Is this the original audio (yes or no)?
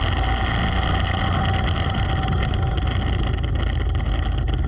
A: yes